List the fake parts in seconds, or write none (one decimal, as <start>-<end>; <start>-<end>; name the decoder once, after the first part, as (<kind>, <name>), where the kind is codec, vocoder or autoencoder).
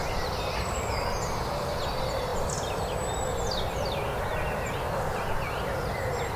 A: none